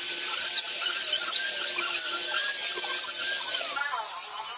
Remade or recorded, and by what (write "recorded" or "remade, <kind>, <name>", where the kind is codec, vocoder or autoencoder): recorded